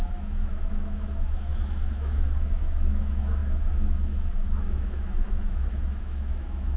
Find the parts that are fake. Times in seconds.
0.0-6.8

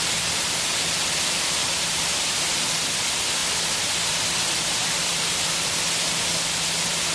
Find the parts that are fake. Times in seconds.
1.6-2.2; 5.1-5.8

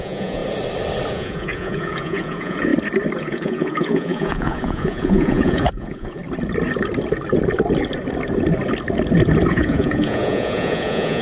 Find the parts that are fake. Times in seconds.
0.0-0.4; 1.1-2.7; 3.2-6.2; 9.5-11.2

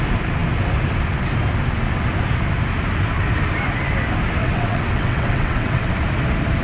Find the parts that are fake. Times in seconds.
4.4-5.9